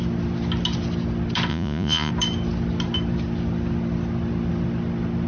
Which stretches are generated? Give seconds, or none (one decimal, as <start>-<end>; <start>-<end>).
1.5-2.1